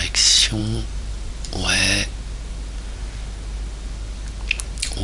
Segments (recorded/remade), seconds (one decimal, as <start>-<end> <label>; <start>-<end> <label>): 0.0-0.6 recorded; 0.6-1.8 remade; 1.8-5.0 recorded